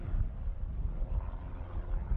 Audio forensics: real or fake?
fake